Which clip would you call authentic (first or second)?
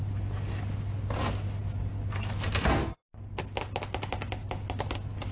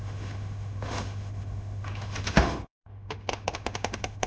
first